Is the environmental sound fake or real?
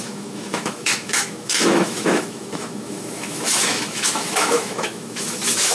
fake